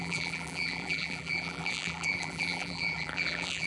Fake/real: fake